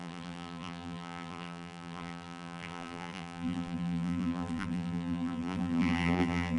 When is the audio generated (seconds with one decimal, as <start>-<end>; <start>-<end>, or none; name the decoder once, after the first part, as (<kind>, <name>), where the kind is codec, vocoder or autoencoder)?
0.0-6.6 (vocoder, BigVGAN v2)